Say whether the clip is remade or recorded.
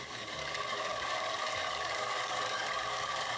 remade